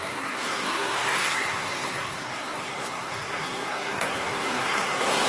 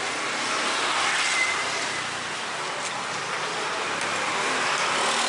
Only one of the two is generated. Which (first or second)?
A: first